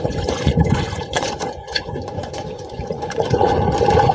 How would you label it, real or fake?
fake